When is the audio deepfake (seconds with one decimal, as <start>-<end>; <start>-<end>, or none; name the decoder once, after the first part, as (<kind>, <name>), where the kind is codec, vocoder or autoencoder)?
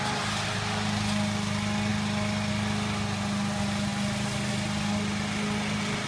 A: none